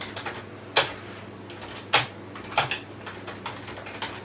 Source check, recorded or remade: recorded